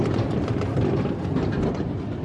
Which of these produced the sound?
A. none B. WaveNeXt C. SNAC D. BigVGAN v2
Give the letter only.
D